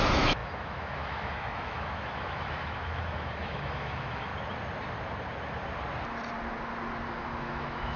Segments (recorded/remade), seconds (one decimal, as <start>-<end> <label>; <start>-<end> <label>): 0.0-4.3 remade; 4.3-7.4 recorded; 7.4-8.0 remade